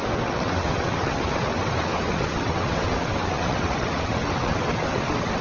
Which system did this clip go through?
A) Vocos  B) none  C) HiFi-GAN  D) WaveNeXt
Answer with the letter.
D